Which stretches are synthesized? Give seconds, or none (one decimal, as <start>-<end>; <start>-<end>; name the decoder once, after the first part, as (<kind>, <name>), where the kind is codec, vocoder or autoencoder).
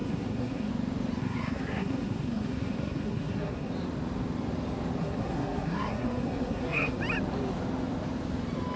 0.0-0.7 (codec, SNAC); 1.2-3.7; 5.0-7.0